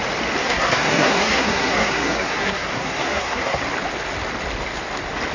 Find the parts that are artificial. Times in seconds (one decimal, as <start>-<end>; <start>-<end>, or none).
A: 0.4-3.6